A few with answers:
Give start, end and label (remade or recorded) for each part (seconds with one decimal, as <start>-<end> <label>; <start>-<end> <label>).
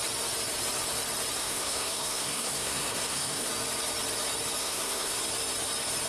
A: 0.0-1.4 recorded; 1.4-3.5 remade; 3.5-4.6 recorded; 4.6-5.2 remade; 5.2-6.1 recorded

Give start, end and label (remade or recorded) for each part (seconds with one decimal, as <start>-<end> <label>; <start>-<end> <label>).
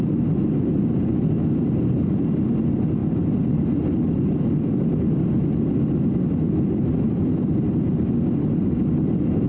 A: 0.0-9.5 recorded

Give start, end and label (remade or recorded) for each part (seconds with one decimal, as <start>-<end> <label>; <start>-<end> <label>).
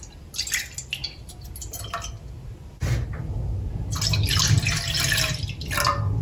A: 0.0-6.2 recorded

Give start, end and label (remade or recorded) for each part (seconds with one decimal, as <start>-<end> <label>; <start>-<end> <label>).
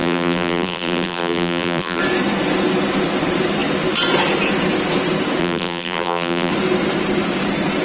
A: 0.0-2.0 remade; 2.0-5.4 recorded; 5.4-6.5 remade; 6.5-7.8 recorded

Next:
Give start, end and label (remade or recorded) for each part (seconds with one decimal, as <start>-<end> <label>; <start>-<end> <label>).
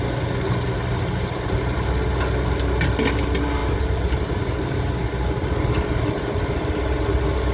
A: 0.0-7.5 recorded